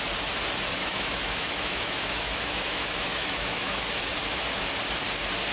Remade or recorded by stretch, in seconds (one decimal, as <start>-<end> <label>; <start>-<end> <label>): 0.0-0.8 recorded; 0.8-4.1 remade; 4.1-5.5 recorded